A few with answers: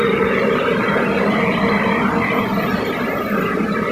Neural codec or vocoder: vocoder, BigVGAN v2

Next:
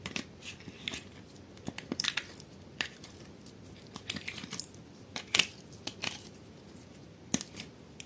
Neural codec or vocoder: none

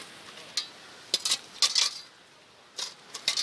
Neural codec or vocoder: none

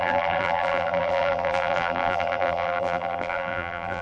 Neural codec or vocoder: vocoder, BigVGAN v2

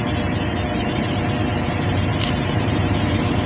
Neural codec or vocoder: vocoder, BigVGAN v2